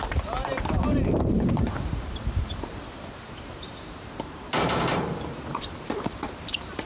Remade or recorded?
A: remade